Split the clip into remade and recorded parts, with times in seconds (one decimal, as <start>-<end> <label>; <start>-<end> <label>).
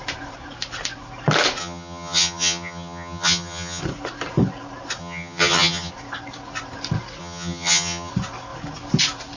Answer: 0.0-1.6 recorded; 1.6-3.8 remade; 3.8-5.0 recorded; 5.0-5.9 remade; 5.9-7.2 recorded; 7.2-8.1 remade; 8.1-9.4 recorded